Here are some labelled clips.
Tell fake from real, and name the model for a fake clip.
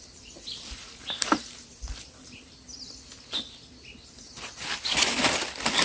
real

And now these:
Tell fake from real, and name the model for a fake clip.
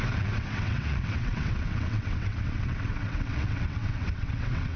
fake, vocoder, WaveNeXt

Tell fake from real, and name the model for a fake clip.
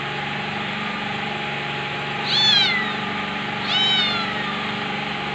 real